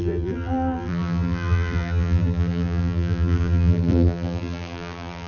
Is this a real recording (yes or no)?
no